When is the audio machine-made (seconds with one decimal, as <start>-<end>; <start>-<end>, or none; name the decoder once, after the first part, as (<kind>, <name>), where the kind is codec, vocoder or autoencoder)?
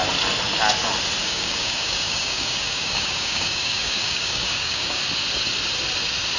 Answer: 1.2-5.0 (codec, DAC)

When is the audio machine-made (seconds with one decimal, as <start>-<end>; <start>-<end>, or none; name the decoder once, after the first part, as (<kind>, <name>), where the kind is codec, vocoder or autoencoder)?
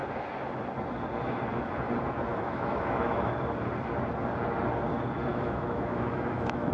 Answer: 2.3-3.3 (autoencoder, DAC-VAE); 5.3-6.7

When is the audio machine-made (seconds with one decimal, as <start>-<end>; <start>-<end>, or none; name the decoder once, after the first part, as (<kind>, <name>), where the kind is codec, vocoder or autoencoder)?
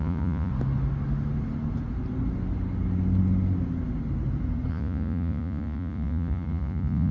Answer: 0.0-0.5 (vocoder, Vocos); 4.7-7.1